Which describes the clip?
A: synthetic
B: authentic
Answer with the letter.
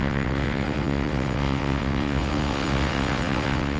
A